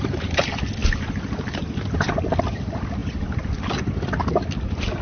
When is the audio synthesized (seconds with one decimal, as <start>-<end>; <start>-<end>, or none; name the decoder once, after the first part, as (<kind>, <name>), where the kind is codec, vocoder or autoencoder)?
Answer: none